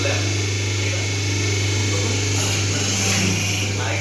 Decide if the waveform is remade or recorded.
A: recorded